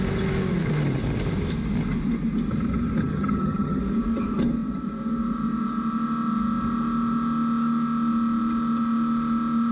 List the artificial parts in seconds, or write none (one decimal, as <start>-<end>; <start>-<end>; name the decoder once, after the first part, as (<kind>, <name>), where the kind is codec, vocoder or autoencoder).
3.0-3.8 (vocoder, HiFi-GAN)